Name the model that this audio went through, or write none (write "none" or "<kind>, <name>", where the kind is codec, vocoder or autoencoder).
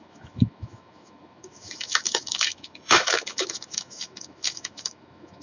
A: autoencoder, DAC-VAE